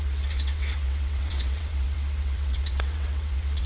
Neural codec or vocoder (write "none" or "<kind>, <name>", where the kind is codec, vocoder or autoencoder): vocoder, WaveNeXt